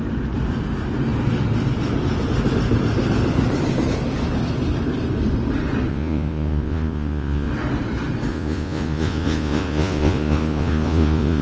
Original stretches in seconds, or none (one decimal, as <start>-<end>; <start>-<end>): 0.0-5.9; 7.5-8.3